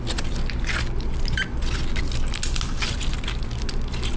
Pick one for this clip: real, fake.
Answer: real